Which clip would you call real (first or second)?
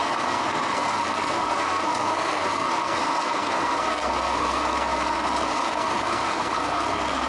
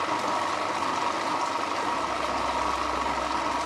second